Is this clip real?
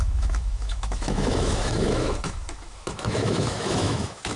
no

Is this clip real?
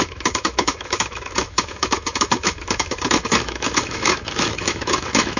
no